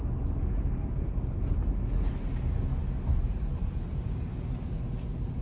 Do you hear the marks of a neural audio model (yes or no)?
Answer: no